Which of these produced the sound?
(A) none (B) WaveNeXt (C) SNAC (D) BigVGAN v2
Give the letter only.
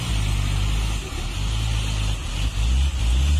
A